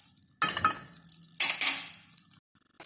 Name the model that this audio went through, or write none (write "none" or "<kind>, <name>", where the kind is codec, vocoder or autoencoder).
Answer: none